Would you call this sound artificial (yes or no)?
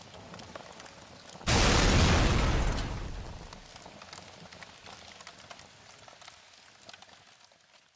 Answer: no